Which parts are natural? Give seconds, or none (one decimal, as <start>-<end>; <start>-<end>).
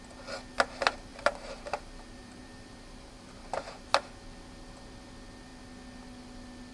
0.0-1.1; 3.1-6.7